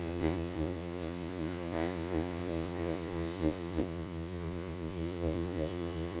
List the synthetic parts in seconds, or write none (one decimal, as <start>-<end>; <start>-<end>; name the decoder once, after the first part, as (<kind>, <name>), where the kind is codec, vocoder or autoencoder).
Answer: 0.0-6.2 (vocoder, Vocos)